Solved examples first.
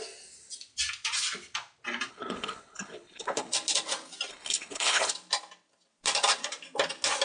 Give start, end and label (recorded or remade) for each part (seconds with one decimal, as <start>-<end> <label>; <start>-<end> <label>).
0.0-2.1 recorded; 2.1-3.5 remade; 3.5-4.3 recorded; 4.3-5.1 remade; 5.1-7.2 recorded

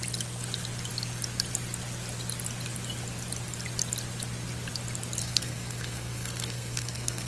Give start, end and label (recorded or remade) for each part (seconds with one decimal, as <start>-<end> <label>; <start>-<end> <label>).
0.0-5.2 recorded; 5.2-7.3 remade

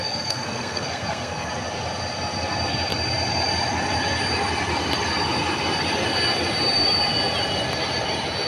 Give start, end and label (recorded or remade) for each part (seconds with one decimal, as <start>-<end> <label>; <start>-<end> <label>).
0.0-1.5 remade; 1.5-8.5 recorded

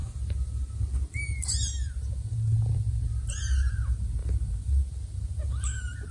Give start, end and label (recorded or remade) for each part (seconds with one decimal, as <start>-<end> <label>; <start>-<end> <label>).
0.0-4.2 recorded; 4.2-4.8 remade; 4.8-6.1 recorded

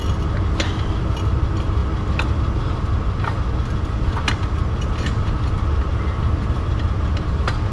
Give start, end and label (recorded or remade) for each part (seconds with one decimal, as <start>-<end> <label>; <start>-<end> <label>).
0.0-7.7 recorded

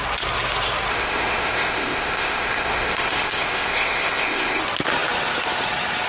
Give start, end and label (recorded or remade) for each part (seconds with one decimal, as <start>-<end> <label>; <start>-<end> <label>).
0.0-0.9 recorded; 0.9-4.6 remade; 4.6-6.1 recorded

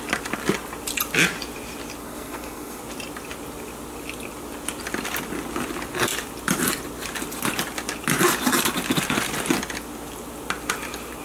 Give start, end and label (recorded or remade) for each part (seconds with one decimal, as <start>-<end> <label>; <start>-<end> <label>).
0.0-2.0 recorded; 2.0-2.8 remade; 2.8-11.2 recorded